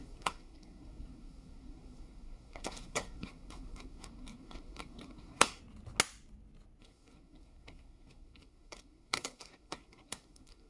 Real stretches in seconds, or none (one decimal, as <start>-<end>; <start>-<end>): 5.6-6.8